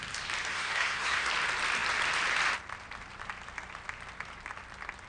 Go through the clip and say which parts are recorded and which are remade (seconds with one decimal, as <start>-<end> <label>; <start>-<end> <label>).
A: 0.0-0.5 recorded; 0.5-1.3 remade; 1.3-5.1 recorded